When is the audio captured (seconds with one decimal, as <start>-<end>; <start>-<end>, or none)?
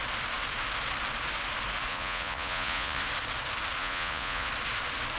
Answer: 0.0-1.9; 3.0-3.8; 4.5-5.2